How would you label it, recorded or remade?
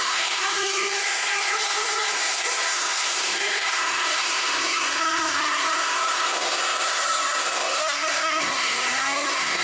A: remade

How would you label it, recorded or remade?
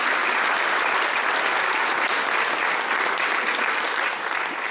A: recorded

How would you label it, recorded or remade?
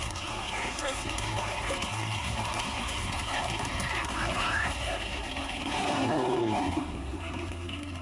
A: remade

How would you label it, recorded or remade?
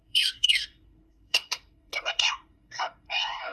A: remade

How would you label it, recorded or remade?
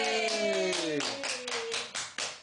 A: recorded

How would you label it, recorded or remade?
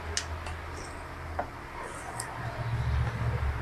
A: recorded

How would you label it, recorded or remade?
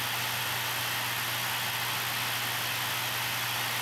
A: recorded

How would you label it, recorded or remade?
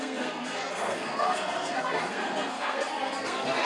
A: remade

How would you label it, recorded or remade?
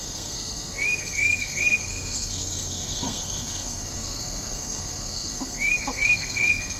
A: remade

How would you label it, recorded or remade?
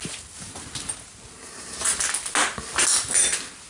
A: recorded